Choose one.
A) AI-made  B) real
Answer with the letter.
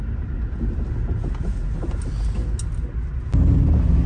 B